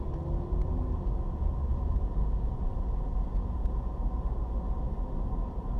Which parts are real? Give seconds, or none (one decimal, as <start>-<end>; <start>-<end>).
0.0-1.7; 3.9-5.8